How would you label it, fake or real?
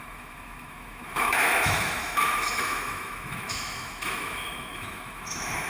fake